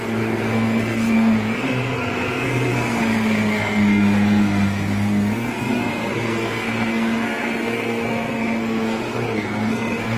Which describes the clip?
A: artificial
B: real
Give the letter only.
A